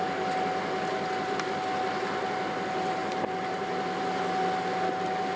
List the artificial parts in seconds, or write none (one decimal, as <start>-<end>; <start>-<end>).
none